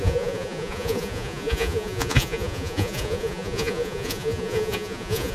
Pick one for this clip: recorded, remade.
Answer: remade